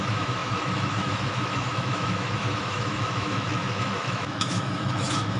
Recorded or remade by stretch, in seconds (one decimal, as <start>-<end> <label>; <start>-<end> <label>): 0.0-5.4 remade